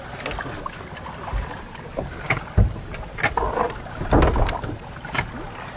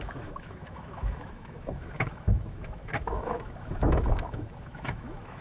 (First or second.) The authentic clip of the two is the first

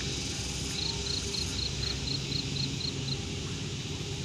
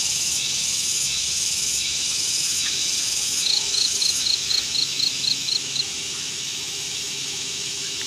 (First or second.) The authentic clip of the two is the first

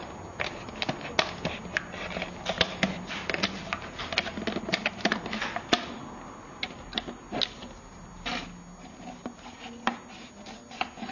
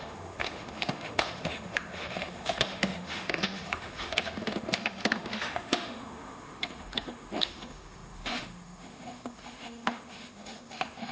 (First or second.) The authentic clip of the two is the first